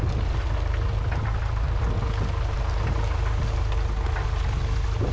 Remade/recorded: recorded